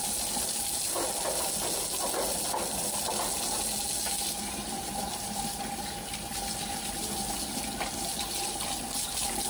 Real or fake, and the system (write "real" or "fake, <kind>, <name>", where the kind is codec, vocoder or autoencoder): real